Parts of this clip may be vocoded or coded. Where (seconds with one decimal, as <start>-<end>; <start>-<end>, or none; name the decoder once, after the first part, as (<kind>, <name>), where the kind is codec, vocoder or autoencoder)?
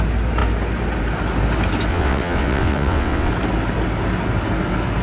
1.9-3.3 (vocoder, WaveNeXt)